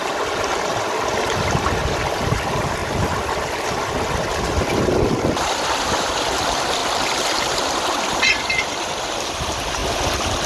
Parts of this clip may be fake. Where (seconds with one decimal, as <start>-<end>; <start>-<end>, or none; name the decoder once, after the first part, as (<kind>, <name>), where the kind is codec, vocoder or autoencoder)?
0.0-9.8 (vocoder, BigVGAN v2)